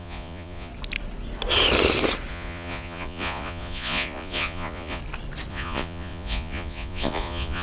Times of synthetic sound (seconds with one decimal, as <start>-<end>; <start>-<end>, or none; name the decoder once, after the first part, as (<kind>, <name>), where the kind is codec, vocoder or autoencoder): 0.0-0.7 (vocoder, Vocos); 2.3-5.0; 5.5-7.6